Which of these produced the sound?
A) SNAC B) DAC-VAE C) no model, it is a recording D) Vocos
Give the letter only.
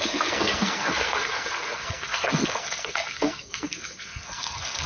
A